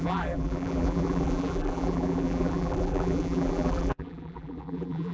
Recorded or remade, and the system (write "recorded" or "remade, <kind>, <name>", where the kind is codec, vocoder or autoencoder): remade, vocoder, BigVGAN v2